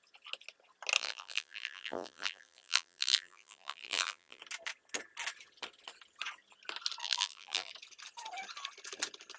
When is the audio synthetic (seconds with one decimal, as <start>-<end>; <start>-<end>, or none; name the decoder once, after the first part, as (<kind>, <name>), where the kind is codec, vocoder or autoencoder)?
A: 1.0-4.4 (vocoder, BigVGAN v2); 7.0-7.7